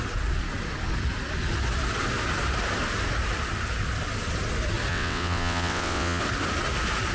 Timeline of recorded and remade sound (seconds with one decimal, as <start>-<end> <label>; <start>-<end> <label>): 0.0-4.9 recorded; 4.9-6.2 remade; 6.2-7.1 recorded

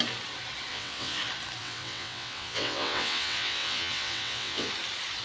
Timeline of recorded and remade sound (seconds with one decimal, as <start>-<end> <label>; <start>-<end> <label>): 0.0-0.7 recorded; 0.7-1.2 remade; 1.2-1.6 recorded; 1.6-4.7 remade; 4.7-5.2 recorded

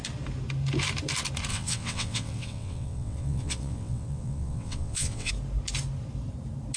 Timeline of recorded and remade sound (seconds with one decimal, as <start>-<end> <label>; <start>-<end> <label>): 0.0-1.5 recorded; 1.5-5.3 remade; 5.3-6.8 recorded

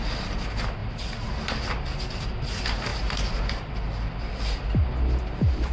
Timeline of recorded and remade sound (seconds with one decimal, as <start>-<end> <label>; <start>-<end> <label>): 0.0-5.7 recorded

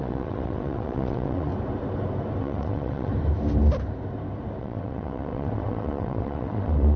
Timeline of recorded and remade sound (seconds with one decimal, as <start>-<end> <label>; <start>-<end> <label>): 0.0-1.5 remade; 1.5-2.4 recorded; 2.4-3.1 remade; 3.1-4.6 recorded; 4.6-7.0 remade

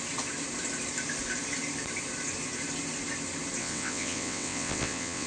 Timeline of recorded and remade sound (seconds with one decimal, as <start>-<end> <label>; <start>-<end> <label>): 0.0-3.6 recorded; 3.6-5.3 remade

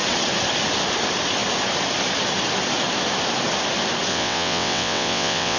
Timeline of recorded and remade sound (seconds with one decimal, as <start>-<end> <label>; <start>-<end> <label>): 0.0-4.1 recorded; 4.1-5.6 remade